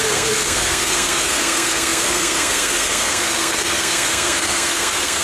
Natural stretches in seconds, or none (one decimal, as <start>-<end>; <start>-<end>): none